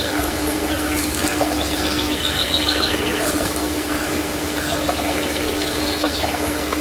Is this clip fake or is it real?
fake